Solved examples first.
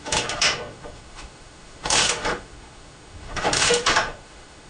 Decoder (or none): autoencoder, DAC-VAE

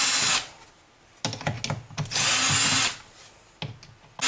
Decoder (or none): none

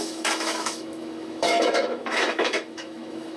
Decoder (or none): autoencoder, DAC-VAE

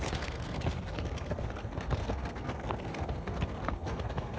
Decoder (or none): codec, SNAC